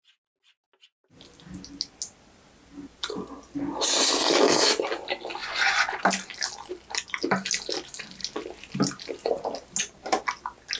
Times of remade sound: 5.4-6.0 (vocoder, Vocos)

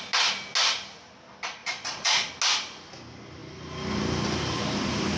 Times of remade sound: 1.6-2.3 (vocoder, Vocos)

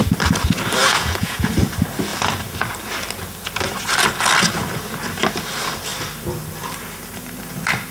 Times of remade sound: 0.8-1.5 (vocoder, Vocos)

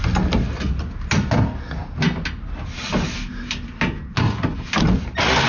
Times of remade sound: none

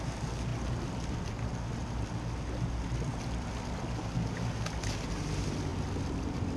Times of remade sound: none